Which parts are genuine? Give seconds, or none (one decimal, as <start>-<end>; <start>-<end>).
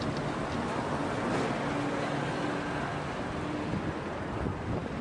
0.0-5.0